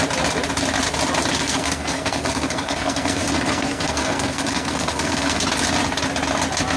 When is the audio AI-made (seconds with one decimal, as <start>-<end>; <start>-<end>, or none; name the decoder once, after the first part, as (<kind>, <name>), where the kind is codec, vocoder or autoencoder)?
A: 1.3-5.4 (codec, SNAC)